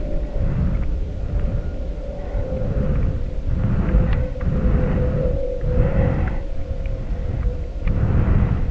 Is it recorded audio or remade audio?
remade